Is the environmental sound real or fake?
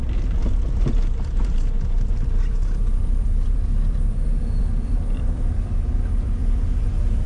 fake